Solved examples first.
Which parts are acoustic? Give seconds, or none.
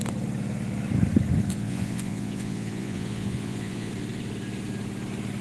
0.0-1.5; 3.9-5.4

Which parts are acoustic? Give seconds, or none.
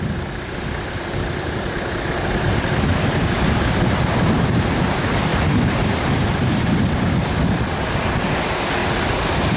0.0-5.3; 6.2-8.8